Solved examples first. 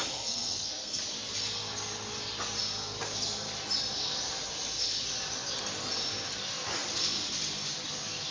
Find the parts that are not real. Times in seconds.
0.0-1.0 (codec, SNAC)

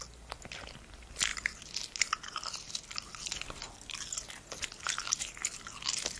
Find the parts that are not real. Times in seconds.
none

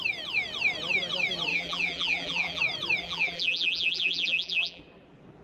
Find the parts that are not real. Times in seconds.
1.5-2.6 (vocoder, BigVGAN v2); 3.0-4.8

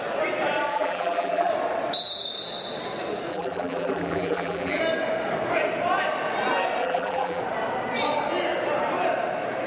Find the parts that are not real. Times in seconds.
0.7-1.5 (vocoder, BigVGAN v2); 3.3-4.8; 6.8-7.4

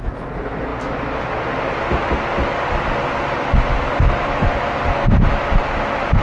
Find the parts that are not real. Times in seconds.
none

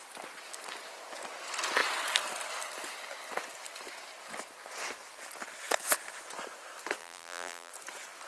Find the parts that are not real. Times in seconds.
7.0-7.7 (vocoder, BigVGAN v2)

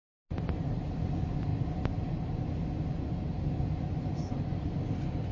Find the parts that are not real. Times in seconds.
none